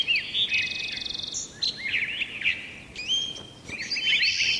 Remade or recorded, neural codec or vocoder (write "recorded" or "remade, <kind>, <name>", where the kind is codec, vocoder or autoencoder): recorded